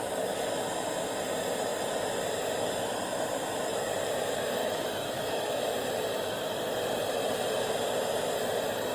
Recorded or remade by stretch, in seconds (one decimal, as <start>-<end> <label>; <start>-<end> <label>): 0.0-4.6 recorded; 4.6-5.6 remade; 5.6-8.9 recorded